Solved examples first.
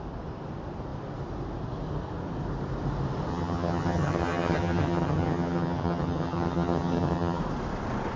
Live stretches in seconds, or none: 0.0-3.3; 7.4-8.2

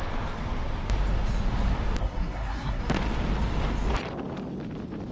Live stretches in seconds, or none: 0.0-2.0; 2.8-5.1

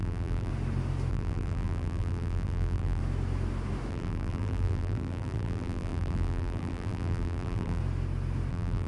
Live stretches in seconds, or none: 0.5-1.1; 3.0-3.9; 7.8-8.5

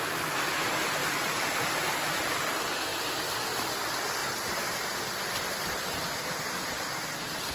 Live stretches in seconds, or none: 0.0-4.2; 5.8-7.5

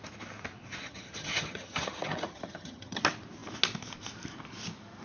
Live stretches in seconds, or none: 0.0-0.8; 3.0-5.0

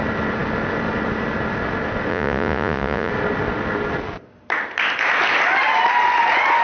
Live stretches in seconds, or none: 0.0-2.1; 3.1-6.6

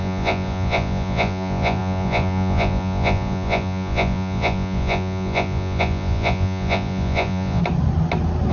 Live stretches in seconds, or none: 7.6-8.5